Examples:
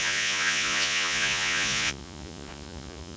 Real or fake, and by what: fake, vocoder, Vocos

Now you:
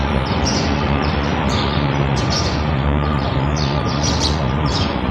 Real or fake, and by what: fake, vocoder, Vocos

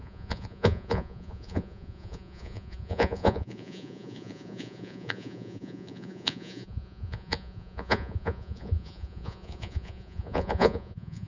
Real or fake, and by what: fake, vocoder, Vocos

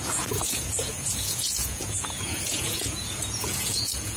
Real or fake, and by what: fake, vocoder, Vocos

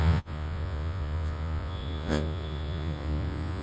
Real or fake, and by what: fake, vocoder, Vocos